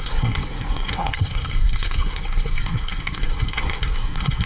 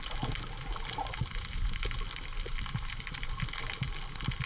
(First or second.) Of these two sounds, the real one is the second